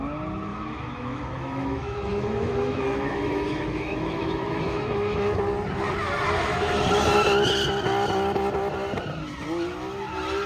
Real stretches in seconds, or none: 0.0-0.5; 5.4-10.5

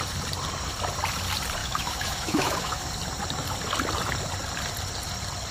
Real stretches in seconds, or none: 0.0-1.6; 2.9-5.5